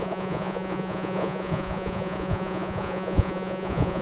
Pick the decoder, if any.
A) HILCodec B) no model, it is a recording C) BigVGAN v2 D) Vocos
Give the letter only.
D